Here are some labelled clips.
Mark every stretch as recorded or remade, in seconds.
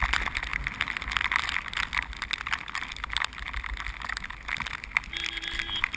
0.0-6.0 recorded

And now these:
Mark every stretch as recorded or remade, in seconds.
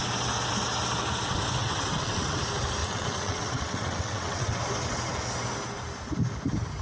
0.0-1.6 recorded; 1.6-2.4 remade; 2.4-2.8 recorded; 2.8-4.6 remade; 4.6-6.8 recorded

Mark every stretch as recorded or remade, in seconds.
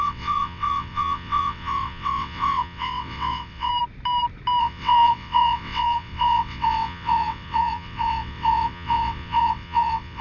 0.0-3.7 remade; 3.7-4.6 recorded; 4.6-10.2 remade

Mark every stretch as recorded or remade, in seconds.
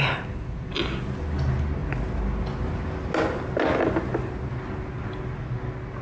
0.0-6.0 recorded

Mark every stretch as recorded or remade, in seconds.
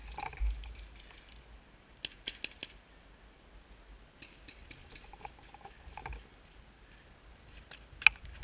0.0-8.4 recorded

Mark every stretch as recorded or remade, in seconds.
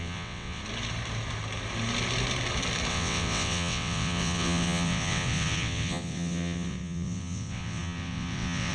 0.0-0.6 remade; 0.6-2.9 recorded; 2.9-8.7 remade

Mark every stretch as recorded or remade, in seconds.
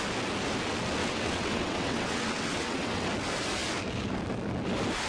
0.0-1.0 recorded; 1.0-3.1 remade; 3.1-5.1 recorded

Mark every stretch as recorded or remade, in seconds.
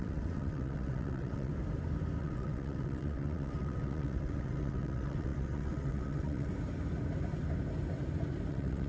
0.0-1.5 remade; 1.5-2.2 recorded; 2.2-6.5 remade; 6.5-8.5 recorded; 8.5-8.9 remade